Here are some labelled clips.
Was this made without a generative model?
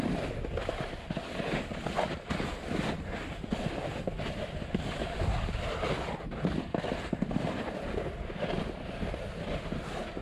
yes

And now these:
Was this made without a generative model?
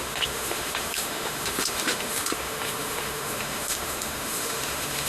no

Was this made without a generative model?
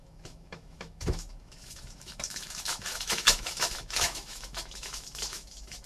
no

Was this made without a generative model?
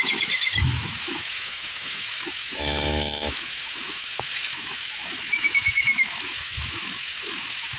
no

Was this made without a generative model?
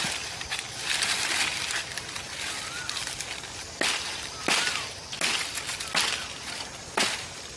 yes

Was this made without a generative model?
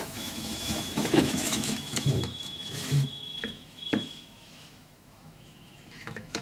no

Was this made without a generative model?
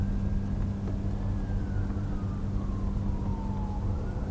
yes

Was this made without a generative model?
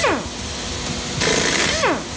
yes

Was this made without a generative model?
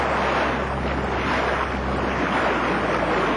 yes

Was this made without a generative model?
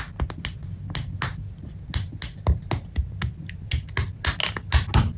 yes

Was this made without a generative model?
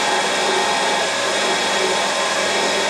yes